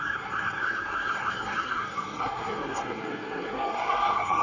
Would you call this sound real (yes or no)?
no